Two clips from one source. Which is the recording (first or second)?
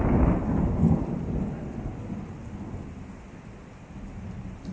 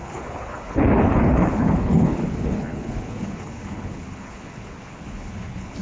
first